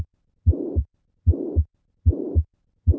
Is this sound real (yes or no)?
no